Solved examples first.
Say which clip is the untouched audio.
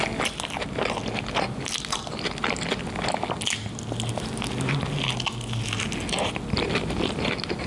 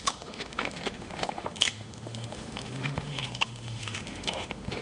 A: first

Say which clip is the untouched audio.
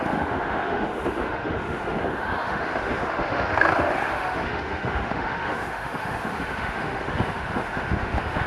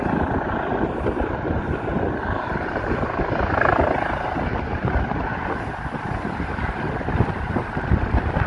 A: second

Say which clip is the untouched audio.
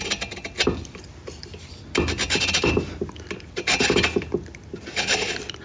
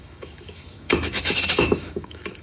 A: first